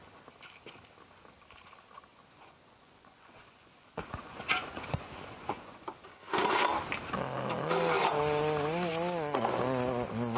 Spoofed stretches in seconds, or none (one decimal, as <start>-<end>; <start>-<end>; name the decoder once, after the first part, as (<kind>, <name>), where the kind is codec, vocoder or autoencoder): 2.1-5.8 (vocoder, Vocos)